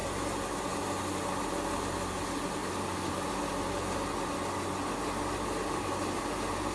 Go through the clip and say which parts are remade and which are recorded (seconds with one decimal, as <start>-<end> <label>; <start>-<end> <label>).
0.0-6.7 recorded